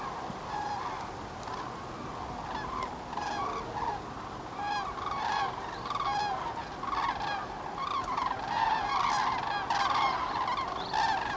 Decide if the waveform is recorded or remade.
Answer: recorded